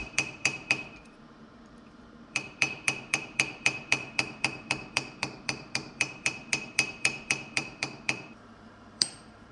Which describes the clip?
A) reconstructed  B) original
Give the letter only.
A